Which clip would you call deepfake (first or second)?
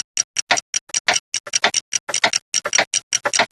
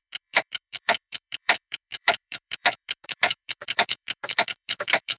second